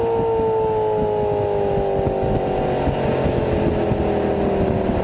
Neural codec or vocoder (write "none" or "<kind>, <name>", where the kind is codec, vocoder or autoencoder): none